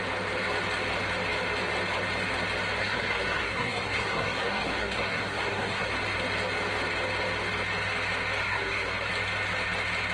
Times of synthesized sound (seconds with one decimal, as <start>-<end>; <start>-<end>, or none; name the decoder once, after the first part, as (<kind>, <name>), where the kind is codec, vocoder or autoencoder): 2.8-5.9 (codec, SNAC); 8.4-9.1